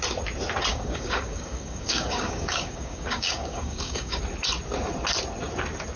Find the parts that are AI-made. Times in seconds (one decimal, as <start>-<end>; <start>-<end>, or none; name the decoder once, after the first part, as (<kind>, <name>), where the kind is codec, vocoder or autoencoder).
0.7-4.2 (codec, DAC)